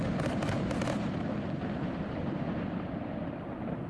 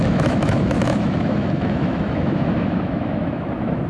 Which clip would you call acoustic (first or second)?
first